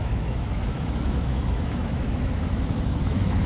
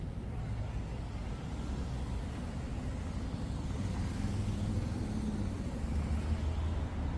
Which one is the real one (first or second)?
second